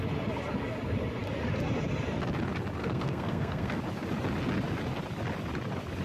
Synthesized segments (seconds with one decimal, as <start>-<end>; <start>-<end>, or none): 2.8-3.8